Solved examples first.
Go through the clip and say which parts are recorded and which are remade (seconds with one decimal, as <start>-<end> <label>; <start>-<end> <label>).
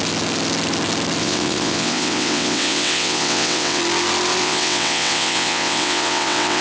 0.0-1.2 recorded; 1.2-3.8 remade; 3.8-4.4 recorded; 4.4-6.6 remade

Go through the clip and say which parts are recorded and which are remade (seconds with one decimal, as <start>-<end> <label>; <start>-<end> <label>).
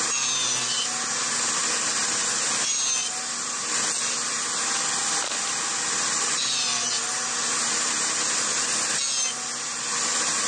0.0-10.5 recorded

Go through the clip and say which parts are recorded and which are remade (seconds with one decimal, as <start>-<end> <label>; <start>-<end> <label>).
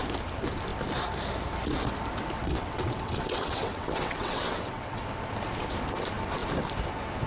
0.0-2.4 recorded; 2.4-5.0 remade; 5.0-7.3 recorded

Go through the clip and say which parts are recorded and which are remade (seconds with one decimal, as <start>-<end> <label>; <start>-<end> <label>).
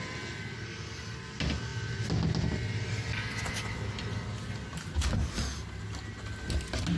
0.0-7.0 recorded